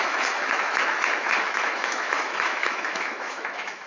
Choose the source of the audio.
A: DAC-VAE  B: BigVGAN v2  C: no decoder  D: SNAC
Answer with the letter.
A